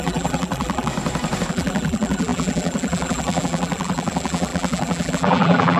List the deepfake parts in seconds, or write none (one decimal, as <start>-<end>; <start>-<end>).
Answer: 0.0-0.9; 1.5-5.8